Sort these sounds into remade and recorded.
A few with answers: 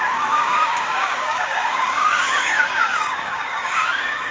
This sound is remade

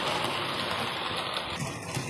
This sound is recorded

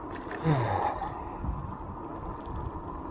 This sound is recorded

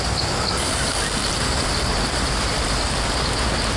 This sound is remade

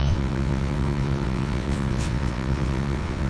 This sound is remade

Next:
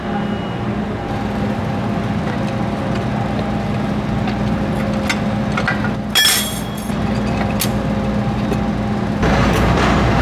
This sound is recorded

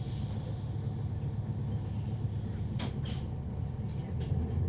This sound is recorded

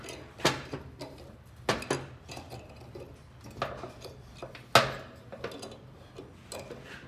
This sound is recorded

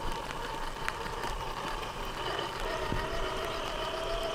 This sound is remade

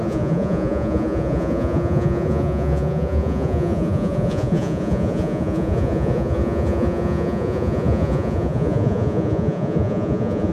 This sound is remade